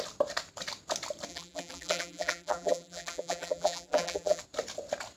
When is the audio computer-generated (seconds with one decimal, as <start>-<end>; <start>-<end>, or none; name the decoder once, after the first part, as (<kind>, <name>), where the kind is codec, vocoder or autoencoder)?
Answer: 1.3-4.4 (vocoder, BigVGAN v2)